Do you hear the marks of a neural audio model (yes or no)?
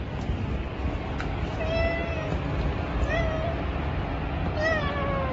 no